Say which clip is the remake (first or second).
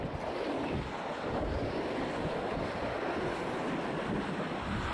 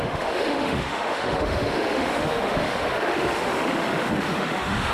second